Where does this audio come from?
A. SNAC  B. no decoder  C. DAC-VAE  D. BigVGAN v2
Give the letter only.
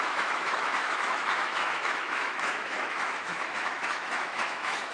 C